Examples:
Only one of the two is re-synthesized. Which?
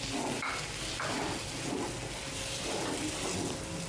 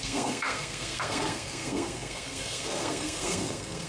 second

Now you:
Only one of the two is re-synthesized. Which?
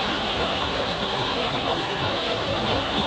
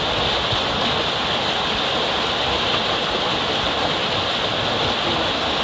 first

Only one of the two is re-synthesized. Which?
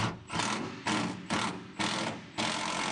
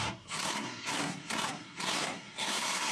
second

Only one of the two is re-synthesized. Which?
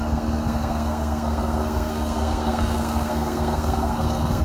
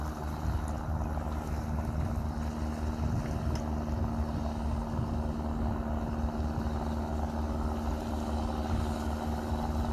first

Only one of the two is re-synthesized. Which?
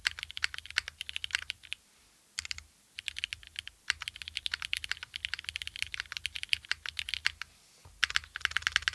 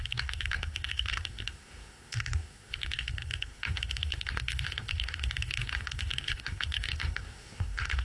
second